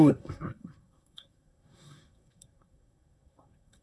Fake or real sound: fake